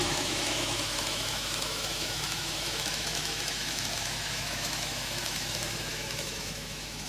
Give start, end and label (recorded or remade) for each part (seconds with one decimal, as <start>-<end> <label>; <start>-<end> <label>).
0.0-7.1 remade